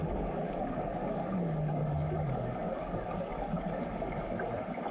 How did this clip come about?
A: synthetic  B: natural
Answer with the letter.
A